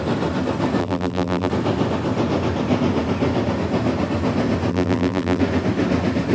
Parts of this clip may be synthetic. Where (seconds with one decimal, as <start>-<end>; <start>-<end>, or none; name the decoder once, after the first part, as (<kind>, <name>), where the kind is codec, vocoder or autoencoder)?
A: 0.8-1.5 (vocoder, BigVGAN v2); 4.7-5.4

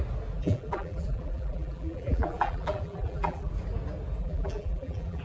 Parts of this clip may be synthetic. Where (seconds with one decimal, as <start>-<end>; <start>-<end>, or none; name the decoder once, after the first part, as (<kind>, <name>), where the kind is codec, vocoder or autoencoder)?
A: 0.4-3.5 (vocoder, BigVGAN v2); 4.2-5.2

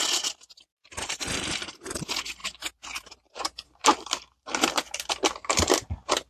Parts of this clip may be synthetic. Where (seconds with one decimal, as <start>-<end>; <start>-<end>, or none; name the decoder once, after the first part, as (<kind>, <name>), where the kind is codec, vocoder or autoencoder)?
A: 0.8-2.0 (vocoder, BigVGAN v2); 2.4-6.3

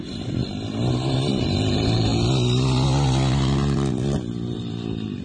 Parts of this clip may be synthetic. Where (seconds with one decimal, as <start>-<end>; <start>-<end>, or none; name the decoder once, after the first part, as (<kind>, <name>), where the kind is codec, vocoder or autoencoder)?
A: 0.0-0.4 (vocoder, BigVGAN v2); 1.3-2.1; 4.3-5.2

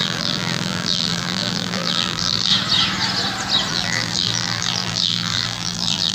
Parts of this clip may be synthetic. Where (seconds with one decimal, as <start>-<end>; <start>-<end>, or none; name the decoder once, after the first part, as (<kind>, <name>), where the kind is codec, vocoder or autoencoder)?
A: 0.0-2.5 (vocoder, BigVGAN v2); 3.7-6.1

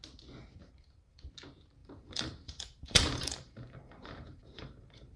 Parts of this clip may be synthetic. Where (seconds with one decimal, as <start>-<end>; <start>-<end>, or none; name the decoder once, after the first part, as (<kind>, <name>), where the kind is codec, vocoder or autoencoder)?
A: 0.6-1.3 (vocoder, BigVGAN v2); 1.8-5.2

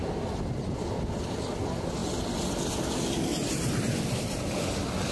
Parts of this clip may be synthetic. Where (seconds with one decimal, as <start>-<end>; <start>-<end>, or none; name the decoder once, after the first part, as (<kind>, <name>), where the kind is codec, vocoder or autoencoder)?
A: 0.0-2.0 (vocoder, BigVGAN v2); 2.9-5.1

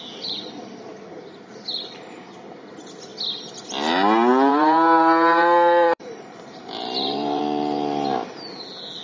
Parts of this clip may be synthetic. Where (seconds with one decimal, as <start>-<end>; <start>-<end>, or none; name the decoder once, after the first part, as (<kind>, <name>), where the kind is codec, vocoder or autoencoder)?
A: 4.5-7.4 (vocoder, BigVGAN v2)